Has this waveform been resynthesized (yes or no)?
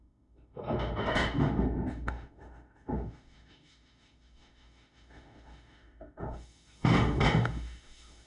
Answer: yes